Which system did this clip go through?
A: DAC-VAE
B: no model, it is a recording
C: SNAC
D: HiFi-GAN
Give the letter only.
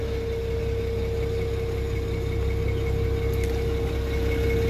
B